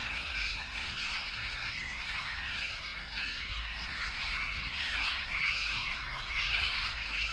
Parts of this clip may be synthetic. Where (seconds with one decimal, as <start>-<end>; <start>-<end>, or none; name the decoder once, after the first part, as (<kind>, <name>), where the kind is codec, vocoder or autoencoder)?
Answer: 0.0-7.3 (codec, SNAC)